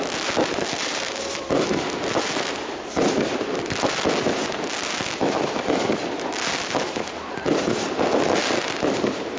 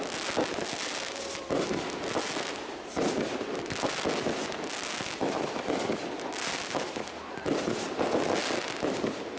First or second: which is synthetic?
first